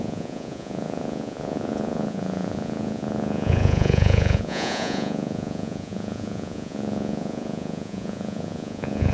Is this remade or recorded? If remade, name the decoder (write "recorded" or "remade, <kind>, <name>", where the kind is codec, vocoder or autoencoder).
remade, vocoder, Vocos